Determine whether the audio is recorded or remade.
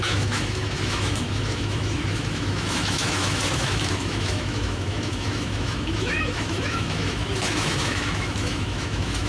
remade